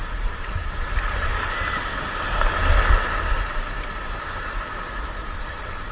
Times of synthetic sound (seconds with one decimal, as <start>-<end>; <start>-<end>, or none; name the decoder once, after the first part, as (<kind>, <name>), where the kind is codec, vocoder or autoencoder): 0.0-1.3 (vocoder, BigVGAN v2); 4.7-5.9